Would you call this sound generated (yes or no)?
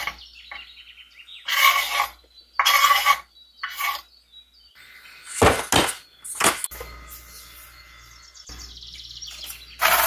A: no